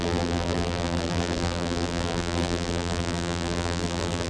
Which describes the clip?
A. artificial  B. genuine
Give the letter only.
A